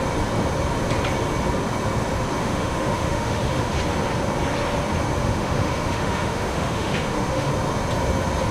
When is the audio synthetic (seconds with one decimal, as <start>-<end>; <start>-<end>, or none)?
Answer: 2.4-3.8; 5.2-7.5